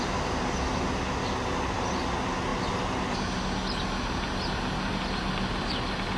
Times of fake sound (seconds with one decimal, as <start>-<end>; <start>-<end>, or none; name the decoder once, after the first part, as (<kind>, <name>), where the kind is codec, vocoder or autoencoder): none